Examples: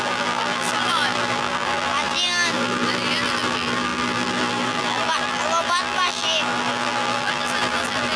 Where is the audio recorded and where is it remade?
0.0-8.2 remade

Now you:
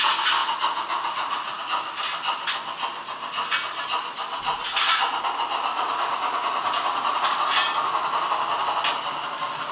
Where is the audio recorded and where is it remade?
0.0-0.4 recorded; 0.4-1.6 remade; 1.6-5.7 recorded; 5.7-7.3 remade; 7.3-9.7 recorded

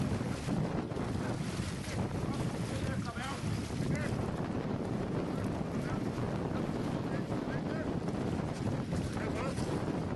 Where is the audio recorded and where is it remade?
0.0-6.2 remade; 6.2-8.4 recorded; 8.4-10.2 remade

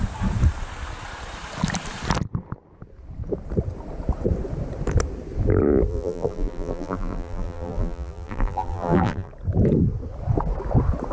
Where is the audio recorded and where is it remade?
0.0-5.9 recorded; 5.9-9.3 remade; 9.3-11.1 recorded